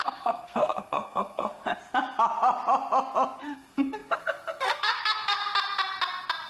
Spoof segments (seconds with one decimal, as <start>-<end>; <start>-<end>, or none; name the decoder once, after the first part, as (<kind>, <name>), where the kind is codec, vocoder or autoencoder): 0.0-1.6 (codec, SNAC); 3.4-5.4

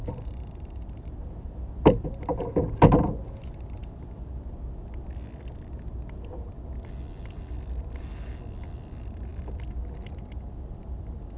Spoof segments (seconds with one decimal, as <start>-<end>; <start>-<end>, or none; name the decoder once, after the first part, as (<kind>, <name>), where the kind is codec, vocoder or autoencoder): 0.0-1.1 (vocoder, BigVGAN v2)

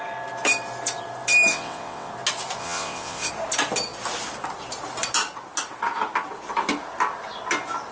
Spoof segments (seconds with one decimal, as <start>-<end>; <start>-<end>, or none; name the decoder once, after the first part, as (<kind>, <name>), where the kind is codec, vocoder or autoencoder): 1.5-2.1 (vocoder, WaveNeXt); 2.6-3.3

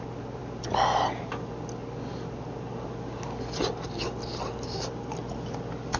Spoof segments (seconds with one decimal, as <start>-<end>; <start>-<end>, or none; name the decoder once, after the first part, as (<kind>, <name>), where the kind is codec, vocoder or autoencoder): none

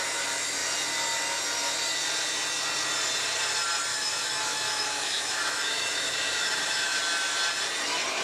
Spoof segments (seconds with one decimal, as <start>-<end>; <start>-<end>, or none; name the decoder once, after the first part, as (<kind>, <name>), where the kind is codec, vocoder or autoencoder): 3.9-7.0 (autoencoder, DAC-VAE)

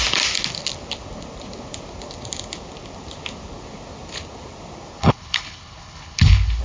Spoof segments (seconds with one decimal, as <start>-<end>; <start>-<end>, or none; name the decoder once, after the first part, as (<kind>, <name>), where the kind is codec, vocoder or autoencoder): 5.0-6.6 (codec, HILCodec)

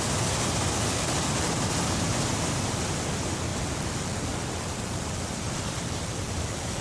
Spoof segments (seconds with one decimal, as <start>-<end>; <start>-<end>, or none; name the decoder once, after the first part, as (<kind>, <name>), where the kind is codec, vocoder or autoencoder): 0.9-1.9 (vocoder, BigVGAN v2); 3.5-6.8

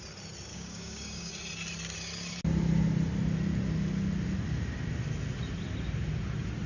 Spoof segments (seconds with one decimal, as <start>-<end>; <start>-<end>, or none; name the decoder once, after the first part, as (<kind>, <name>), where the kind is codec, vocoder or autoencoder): 0.5-1.3 (codec, DAC)